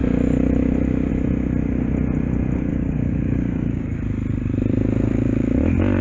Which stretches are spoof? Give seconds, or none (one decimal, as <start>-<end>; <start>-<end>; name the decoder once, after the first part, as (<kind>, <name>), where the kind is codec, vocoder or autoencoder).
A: 2.7-4.0 (codec, DAC)